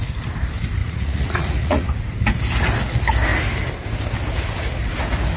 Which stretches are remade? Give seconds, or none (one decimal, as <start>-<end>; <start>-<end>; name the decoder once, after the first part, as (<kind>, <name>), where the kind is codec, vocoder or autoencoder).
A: 0.8-2.1 (vocoder, Vocos)